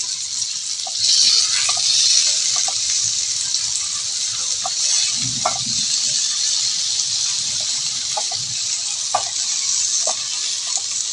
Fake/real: real